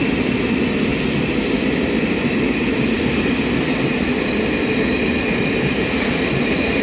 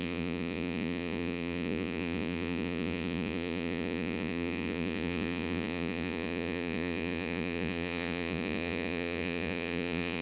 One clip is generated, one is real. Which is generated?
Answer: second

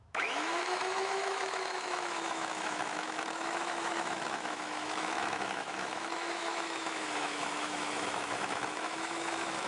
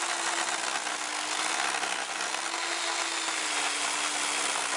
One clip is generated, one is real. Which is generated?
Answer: first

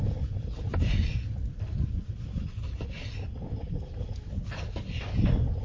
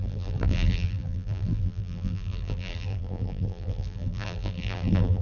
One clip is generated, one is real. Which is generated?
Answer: second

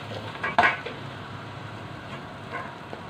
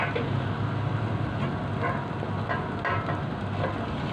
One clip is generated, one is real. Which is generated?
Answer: first